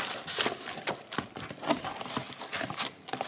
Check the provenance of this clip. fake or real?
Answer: real